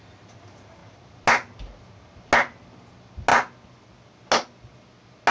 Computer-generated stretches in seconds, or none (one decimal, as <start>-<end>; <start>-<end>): none